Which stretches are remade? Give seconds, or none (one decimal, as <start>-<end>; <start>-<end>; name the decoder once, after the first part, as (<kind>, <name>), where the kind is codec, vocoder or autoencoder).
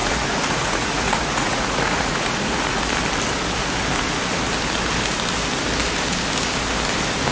0.0-2.8 (vocoder, Vocos)